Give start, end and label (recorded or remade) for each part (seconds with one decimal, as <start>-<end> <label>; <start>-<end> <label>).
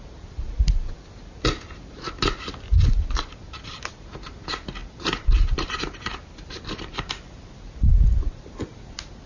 0.0-4.8 recorded; 4.8-7.1 remade; 7.1-7.9 recorded; 7.9-8.5 remade; 8.5-9.3 recorded